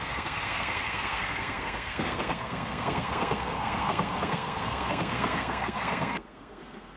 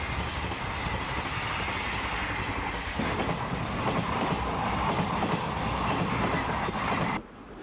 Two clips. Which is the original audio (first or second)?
second